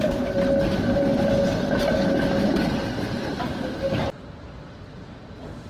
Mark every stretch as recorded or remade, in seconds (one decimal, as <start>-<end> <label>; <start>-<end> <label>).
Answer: 0.0-5.7 recorded